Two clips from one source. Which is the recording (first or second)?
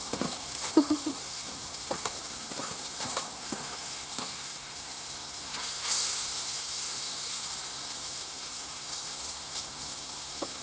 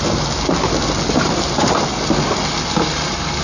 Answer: second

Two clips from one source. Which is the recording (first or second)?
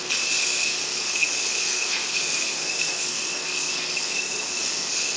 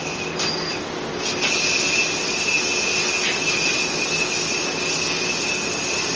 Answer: second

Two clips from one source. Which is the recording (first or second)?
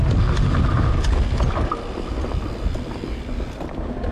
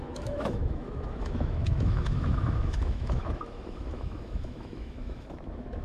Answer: first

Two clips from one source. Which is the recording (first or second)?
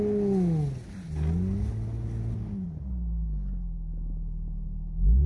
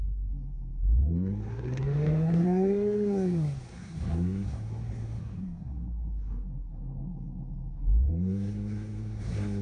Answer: first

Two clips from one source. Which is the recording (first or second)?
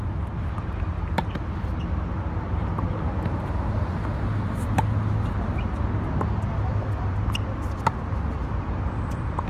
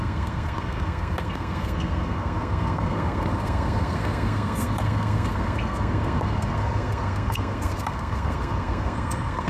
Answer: first